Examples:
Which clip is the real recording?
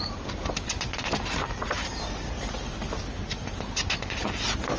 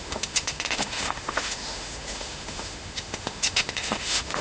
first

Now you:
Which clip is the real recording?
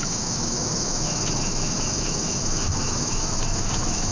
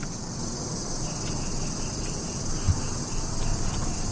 second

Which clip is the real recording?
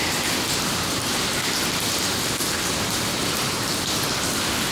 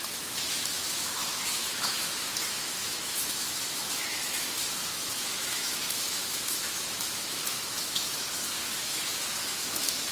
first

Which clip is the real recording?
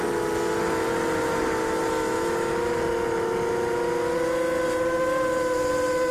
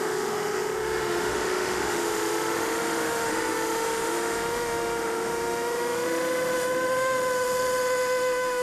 first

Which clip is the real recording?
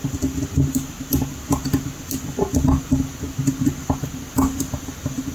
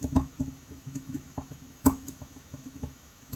first